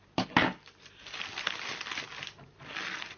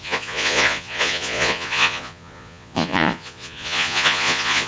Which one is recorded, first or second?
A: first